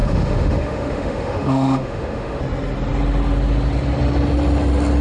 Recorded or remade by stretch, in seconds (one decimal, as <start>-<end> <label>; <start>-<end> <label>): 0.0-2.4 remade; 2.4-5.0 recorded